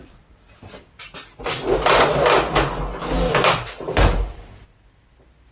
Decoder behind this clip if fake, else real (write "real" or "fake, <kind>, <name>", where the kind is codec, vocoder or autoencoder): real